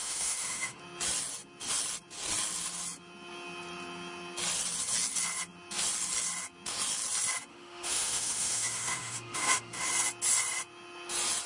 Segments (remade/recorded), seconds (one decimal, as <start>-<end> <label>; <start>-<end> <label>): 0.0-0.8 remade; 0.8-7.5 recorded; 7.5-9.9 remade; 9.9-11.5 recorded